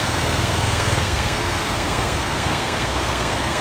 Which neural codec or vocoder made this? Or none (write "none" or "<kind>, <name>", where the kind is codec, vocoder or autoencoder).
codec, SNAC